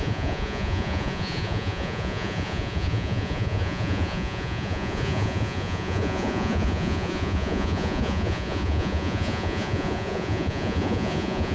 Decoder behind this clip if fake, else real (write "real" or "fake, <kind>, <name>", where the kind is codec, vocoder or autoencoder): fake, vocoder, Vocos